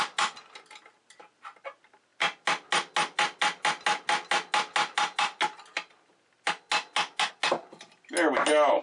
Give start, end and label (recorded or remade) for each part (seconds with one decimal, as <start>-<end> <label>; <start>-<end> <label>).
0.0-8.8 recorded